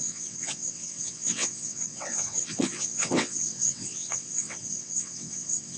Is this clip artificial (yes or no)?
yes